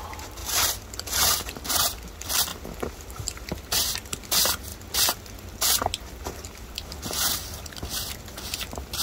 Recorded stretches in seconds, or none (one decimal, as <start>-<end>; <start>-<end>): 0.0-2.5; 3.9-9.0